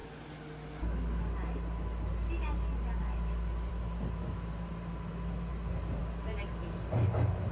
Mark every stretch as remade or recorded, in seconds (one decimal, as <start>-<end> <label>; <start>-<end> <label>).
0.0-7.5 recorded